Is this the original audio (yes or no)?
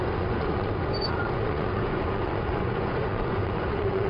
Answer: no